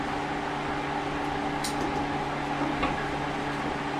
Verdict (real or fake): real